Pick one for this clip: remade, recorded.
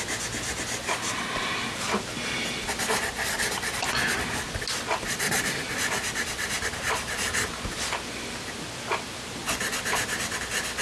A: recorded